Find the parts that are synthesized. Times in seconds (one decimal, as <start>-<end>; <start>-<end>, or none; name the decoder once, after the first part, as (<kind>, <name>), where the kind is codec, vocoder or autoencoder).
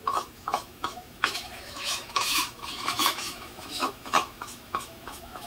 0.0-5.5 (autoencoder, DAC-VAE)